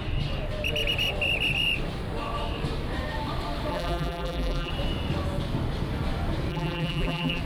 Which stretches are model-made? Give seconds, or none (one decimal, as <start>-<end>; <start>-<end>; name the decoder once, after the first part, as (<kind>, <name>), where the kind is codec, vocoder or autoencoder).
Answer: 3.7-4.7 (vocoder, BigVGAN v2); 6.5-7.4